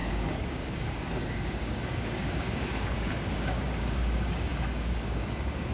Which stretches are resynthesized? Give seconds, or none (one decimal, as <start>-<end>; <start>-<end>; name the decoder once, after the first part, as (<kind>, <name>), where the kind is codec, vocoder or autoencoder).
0.0-5.7 (codec, DAC)